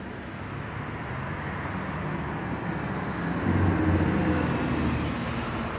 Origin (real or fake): real